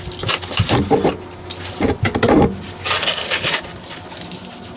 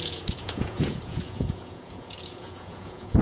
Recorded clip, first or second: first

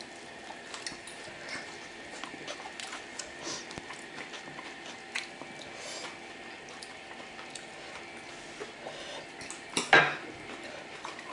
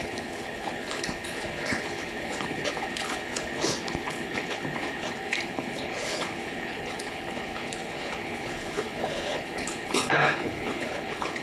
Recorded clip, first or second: first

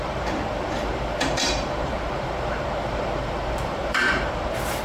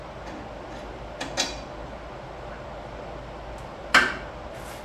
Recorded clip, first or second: second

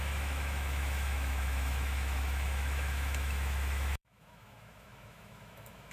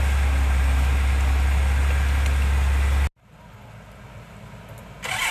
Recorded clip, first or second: second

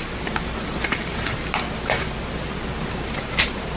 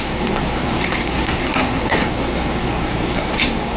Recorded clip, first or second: first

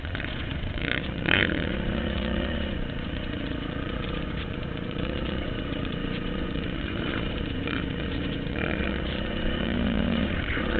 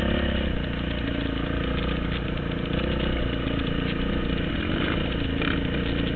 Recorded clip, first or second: second